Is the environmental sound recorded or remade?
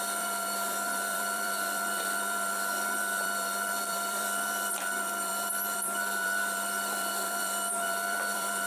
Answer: remade